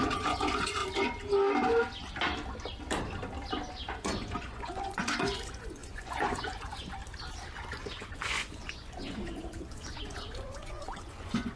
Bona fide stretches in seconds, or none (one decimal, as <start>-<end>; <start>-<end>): 0.8-3.7; 7.0-7.7